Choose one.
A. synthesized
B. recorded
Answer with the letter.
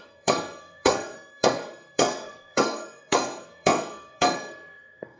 A